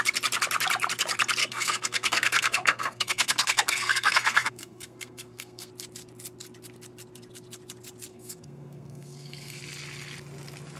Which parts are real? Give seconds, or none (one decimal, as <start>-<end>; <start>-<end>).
0.0-1.4; 5.7-8.1; 9.6-10.8